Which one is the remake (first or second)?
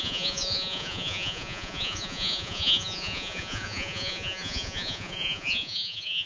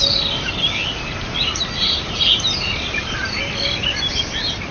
first